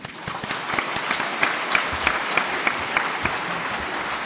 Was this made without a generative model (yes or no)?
yes